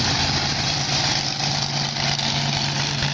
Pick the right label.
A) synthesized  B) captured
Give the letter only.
B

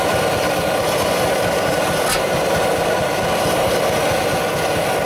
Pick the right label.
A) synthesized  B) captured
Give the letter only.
B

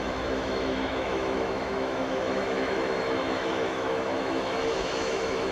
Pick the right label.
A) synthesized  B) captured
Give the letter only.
A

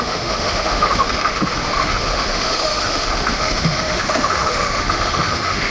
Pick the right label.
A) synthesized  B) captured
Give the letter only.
A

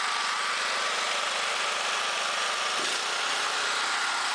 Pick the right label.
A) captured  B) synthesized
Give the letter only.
A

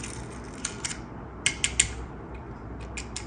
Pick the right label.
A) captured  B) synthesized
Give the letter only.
A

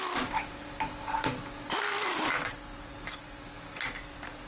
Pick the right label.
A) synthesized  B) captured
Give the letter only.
B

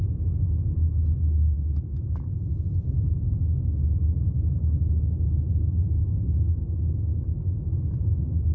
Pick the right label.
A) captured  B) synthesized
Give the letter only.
A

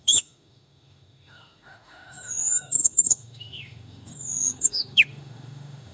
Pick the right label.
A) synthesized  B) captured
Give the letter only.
A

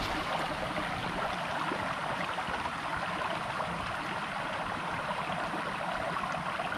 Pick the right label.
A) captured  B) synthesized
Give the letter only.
A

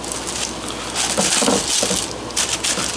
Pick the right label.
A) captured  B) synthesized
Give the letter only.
A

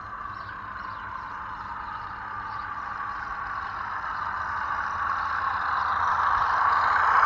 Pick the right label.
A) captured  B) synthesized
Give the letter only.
A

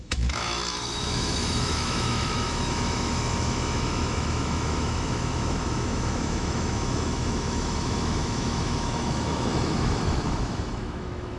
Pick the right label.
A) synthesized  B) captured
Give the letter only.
A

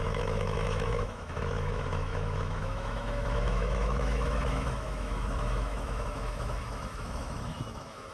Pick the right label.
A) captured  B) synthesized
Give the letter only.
B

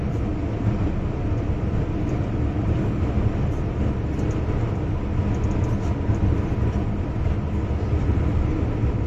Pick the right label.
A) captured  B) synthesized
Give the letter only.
A